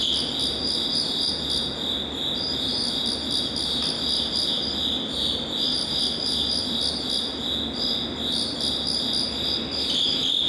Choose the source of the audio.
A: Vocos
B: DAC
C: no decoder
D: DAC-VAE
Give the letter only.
C